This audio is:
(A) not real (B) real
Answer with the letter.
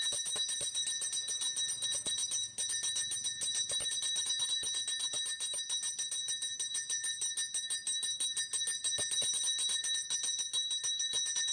B